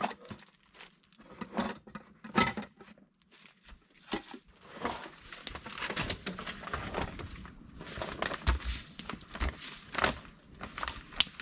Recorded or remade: recorded